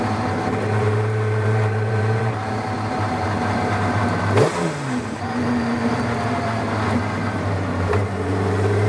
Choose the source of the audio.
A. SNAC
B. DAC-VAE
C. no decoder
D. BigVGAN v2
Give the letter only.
D